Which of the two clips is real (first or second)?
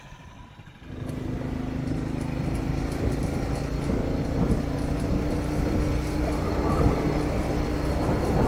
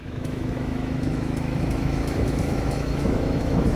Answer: first